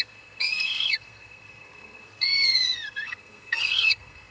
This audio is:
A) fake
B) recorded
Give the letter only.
A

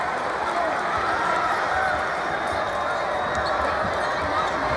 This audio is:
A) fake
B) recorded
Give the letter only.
B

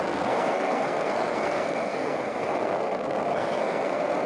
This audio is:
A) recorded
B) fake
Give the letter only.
B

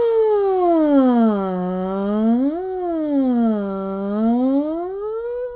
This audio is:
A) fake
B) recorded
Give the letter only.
B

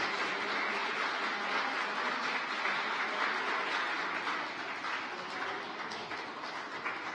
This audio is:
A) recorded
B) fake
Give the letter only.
A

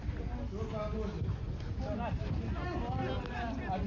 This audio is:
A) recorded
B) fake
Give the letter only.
A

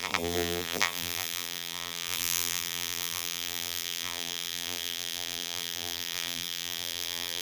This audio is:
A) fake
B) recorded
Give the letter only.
A